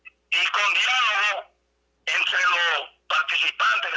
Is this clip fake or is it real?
real